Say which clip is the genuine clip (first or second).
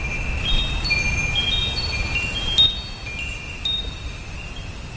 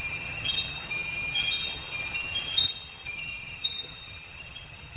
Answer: first